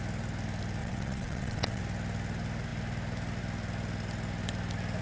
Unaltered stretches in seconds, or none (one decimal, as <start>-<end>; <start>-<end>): 0.0-0.8; 1.8-5.0